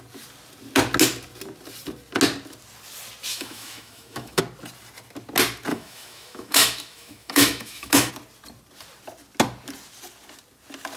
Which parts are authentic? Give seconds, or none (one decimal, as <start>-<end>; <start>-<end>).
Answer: 0.0-3.3; 4.4-5.7; 8.1-11.0